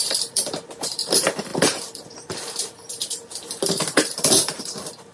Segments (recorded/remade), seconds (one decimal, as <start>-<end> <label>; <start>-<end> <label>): 0.0-5.1 remade